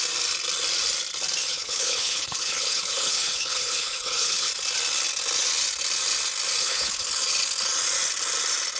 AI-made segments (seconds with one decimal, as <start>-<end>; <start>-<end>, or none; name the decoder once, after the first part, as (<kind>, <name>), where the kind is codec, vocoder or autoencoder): 1.4-4.5 (codec, HILCodec); 6.6-7.1